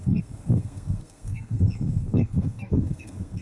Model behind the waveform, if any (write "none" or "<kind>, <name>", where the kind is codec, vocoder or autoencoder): codec, SNAC